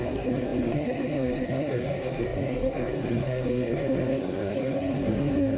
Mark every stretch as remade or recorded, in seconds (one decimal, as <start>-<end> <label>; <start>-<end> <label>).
0.0-5.6 remade